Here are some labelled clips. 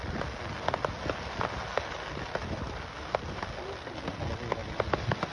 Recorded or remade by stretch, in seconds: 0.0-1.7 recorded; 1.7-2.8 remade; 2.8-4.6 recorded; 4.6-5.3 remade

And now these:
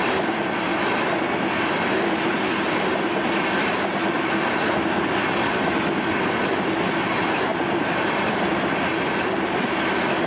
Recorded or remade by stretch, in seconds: 0.0-10.3 recorded

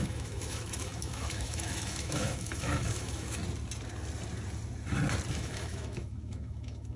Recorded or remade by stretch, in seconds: 0.0-3.4 remade; 3.4-5.3 recorded; 5.3-7.0 remade

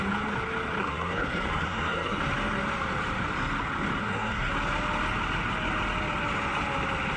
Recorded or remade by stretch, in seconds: 0.0-0.8 recorded; 0.8-2.2 remade; 2.2-4.0 recorded; 4.0-4.5 remade; 4.5-7.2 recorded